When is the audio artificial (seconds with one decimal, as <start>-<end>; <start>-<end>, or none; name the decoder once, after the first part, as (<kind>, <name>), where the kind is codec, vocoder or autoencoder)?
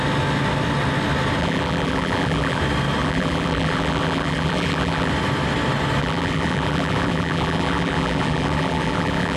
1.4-2.6 (vocoder, BigVGAN v2); 3.0-5.1; 6.0-9.4